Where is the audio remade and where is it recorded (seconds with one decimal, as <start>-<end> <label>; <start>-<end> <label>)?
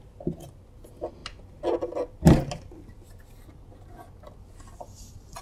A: 0.0-5.4 recorded